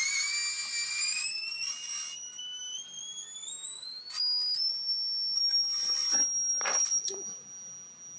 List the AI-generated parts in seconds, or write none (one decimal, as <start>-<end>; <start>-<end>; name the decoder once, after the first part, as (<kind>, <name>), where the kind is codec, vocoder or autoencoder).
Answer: none